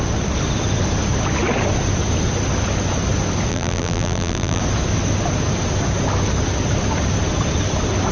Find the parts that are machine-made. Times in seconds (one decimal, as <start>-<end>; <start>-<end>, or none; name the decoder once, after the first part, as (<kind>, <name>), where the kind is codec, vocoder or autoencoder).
3.5-4.6 (vocoder, BigVGAN v2)